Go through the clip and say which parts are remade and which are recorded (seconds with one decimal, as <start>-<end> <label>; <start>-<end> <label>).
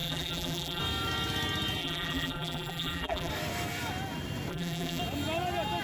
0.0-0.8 remade; 0.8-1.8 recorded; 1.8-3.3 remade; 3.3-4.5 recorded; 4.5-5.0 remade; 5.0-5.8 recorded